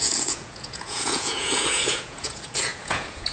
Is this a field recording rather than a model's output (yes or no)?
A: no